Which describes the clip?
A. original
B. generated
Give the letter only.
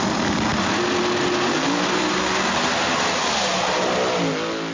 A